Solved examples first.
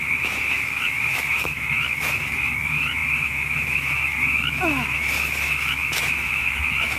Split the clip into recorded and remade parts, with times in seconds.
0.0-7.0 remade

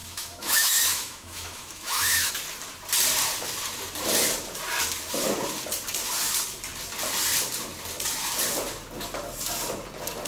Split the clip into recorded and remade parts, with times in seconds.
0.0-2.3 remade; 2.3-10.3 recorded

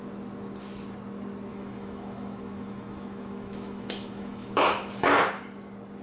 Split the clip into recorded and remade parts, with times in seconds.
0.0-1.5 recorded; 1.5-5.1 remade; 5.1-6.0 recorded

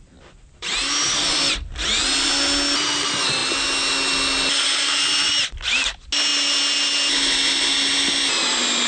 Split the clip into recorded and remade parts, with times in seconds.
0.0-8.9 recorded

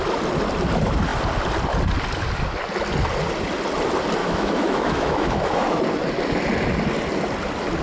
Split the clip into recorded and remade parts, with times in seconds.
0.0-4.2 recorded; 4.2-5.8 remade; 5.8-7.8 recorded

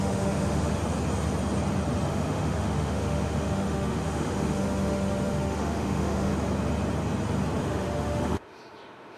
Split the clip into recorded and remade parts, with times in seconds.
0.0-0.8 remade; 0.8-2.1 recorded; 2.1-6.3 remade; 6.3-7.6 recorded; 7.6-9.2 remade

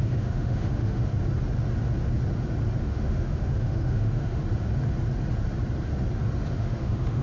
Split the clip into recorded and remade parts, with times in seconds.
0.0-1.1 remade; 1.1-2.8 recorded; 2.8-4.4 remade; 4.4-6.5 recorded; 6.5-7.2 remade